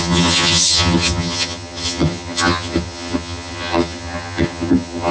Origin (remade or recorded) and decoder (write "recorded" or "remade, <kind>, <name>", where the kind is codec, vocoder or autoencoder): remade, vocoder, HiFi-GAN